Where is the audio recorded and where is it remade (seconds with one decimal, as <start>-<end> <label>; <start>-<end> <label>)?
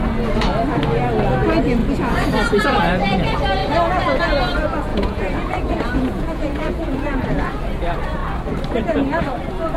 0.0-1.8 recorded; 1.8-2.8 remade; 2.8-4.9 recorded; 4.9-7.6 remade; 7.6-9.8 recorded